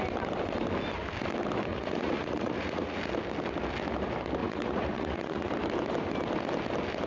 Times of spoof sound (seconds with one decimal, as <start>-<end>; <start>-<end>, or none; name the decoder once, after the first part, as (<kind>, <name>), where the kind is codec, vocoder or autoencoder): 1.7-3.0 (vocoder, Vocos); 4.4-5.5